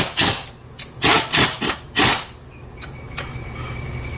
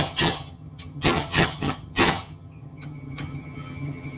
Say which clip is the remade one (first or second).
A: second